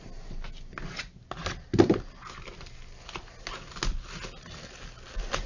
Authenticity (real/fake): real